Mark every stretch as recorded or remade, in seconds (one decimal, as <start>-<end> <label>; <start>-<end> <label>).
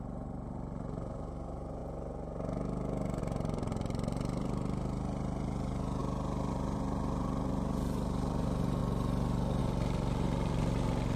0.0-1.8 remade; 1.8-3.2 recorded; 3.2-6.0 remade; 6.0-6.5 recorded; 6.5-8.8 remade; 8.8-9.6 recorded; 9.6-11.2 remade